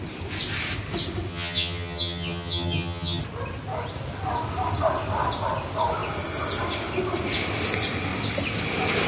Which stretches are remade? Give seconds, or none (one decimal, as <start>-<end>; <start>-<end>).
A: 1.3-3.2